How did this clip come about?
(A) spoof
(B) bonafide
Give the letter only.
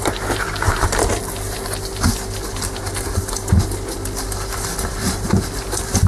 B